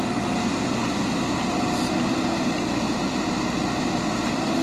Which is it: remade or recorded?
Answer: recorded